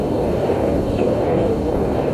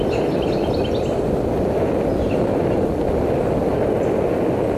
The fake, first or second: first